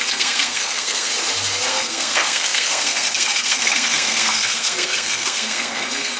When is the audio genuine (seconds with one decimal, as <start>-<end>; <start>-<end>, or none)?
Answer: 1.1-1.7